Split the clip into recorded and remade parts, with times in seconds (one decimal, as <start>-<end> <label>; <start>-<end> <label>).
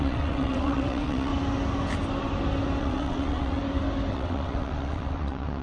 0.0-1.3 remade; 1.3-2.8 recorded; 2.8-3.6 remade; 3.6-4.1 recorded; 4.1-5.6 remade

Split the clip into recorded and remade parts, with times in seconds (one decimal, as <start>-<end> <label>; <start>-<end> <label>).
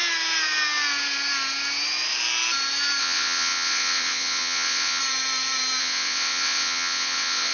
0.0-3.0 recorded; 3.0-5.0 remade; 5.0-5.8 recorded; 5.8-7.5 remade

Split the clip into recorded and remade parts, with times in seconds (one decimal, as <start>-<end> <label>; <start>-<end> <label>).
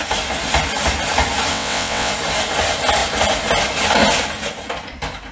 0.0-1.5 recorded; 1.5-2.1 remade; 2.1-5.3 recorded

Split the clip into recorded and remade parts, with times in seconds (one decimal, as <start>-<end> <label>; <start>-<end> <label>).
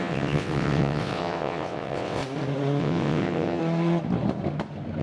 0.0-2.2 remade; 2.2-2.8 recorded; 2.8-3.6 remade; 3.6-5.0 recorded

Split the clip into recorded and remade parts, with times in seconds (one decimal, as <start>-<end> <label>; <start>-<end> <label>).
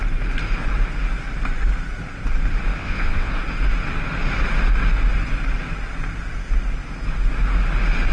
0.0-2.8 recorded; 2.8-3.3 remade; 3.3-8.1 recorded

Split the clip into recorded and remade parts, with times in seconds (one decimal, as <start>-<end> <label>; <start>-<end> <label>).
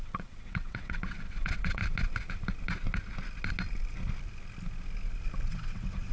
0.0-1.8 remade; 1.8-5.5 recorded; 5.5-6.1 remade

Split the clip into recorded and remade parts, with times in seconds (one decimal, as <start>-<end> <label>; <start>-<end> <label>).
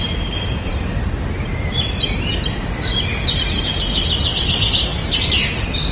0.0-5.9 recorded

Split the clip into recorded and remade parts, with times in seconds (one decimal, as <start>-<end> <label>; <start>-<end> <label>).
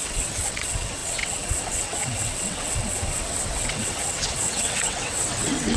0.0-5.8 remade